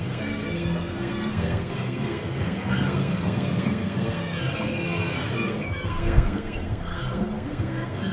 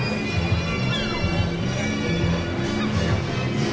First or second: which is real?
second